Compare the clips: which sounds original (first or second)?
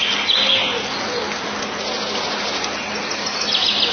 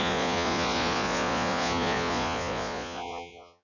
first